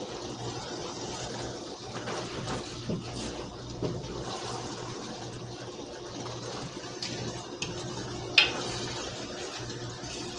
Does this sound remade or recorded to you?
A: recorded